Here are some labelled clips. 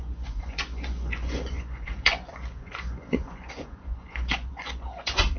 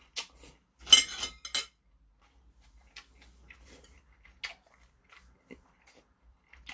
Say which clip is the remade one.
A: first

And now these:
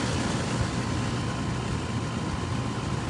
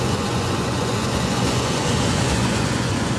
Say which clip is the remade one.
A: second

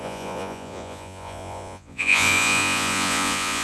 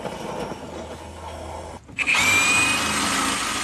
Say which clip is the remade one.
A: first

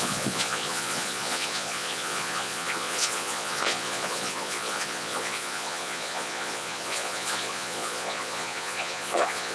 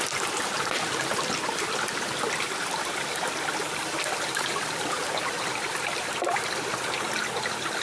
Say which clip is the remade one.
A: first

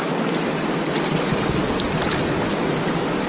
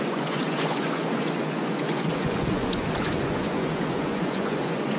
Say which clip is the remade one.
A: second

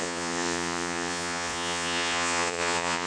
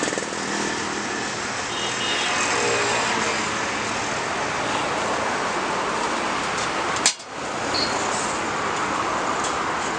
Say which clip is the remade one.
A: first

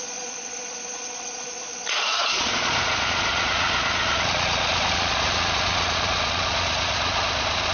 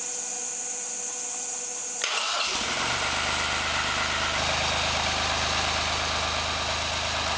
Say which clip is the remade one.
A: first